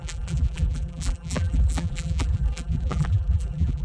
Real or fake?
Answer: fake